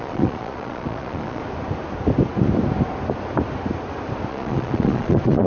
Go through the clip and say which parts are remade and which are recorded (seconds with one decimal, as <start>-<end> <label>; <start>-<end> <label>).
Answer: 0.0-1.4 remade; 1.4-4.3 recorded; 4.3-5.5 remade